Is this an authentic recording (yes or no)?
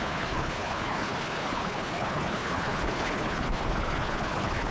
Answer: no